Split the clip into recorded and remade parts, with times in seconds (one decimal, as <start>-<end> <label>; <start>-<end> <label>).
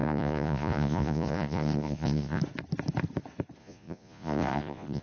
0.0-2.4 remade; 2.4-3.6 recorded; 3.6-5.0 remade